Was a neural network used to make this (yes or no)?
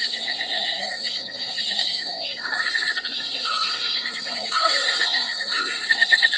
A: yes